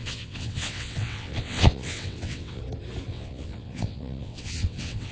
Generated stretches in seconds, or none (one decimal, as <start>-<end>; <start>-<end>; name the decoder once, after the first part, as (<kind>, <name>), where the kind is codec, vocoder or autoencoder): 0.0-2.6 (vocoder, WaveNeXt); 3.1-5.1